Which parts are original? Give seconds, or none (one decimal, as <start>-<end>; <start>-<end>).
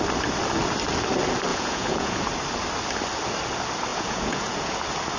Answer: 0.0-1.5; 2.2-3.9; 4.7-5.2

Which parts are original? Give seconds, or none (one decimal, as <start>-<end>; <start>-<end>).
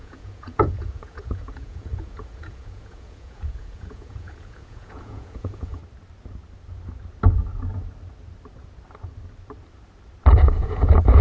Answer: 5.8-10.3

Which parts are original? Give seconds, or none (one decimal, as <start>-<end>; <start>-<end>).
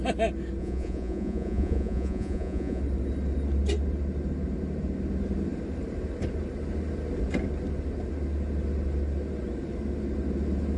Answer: 0.0-0.6; 2.8-10.8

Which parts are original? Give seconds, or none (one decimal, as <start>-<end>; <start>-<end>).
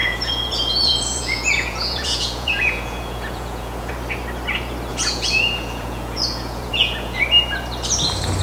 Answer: 3.9-4.9; 7.2-8.4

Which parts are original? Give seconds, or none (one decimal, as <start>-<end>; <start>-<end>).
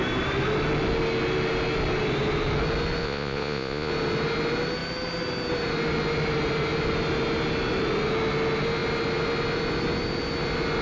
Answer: 0.0-3.0; 3.9-10.8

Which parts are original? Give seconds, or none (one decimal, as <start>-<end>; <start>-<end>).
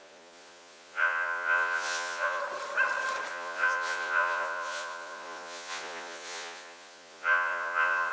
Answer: 2.4-3.3